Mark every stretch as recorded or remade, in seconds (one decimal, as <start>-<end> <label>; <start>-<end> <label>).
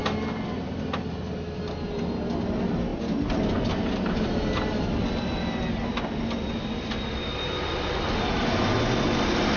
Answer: 0.0-9.6 recorded